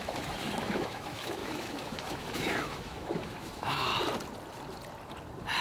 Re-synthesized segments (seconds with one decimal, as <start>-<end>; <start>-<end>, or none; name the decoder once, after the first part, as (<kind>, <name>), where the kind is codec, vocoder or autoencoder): 0.0-3.9 (autoencoder, DAC-VAE)